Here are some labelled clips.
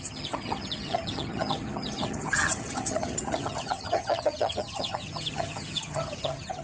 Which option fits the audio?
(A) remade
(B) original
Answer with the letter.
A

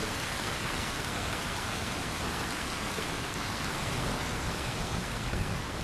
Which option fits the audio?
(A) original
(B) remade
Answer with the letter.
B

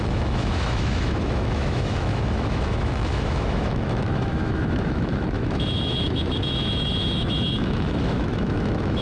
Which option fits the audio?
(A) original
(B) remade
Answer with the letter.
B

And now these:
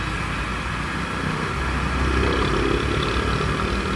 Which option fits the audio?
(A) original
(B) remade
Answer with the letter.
A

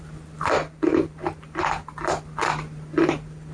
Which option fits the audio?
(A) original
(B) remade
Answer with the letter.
B